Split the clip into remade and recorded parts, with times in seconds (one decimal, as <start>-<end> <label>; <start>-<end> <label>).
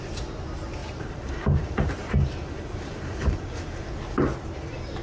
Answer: 0.0-0.8 recorded; 0.8-3.8 remade; 3.8-5.0 recorded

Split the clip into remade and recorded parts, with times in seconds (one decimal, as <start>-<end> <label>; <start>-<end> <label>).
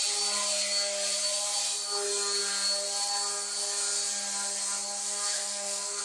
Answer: 0.0-5.0 recorded; 5.0-6.0 remade